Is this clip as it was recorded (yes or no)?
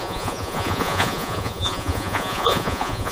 no